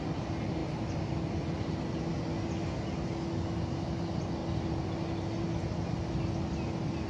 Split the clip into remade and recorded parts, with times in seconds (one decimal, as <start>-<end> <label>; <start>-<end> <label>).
0.0-7.1 recorded